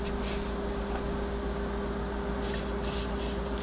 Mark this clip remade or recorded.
recorded